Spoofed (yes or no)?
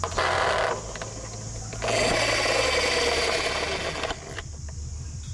no